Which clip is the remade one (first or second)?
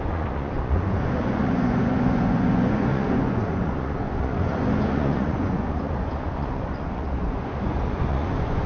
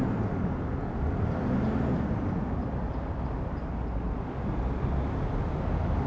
first